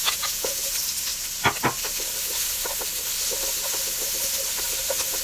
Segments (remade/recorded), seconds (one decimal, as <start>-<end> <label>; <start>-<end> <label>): 0.0-0.6 remade; 0.6-5.2 recorded